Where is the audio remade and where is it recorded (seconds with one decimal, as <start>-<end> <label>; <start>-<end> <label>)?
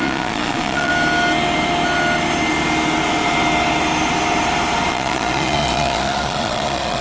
0.0-0.9 remade; 0.9-4.9 recorded; 4.9-7.0 remade